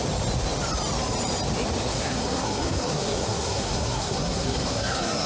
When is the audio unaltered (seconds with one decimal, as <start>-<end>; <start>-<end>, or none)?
0.0-1.9